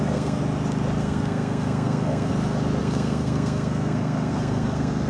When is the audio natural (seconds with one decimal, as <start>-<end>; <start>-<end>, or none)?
0.4-1.0; 2.3-2.8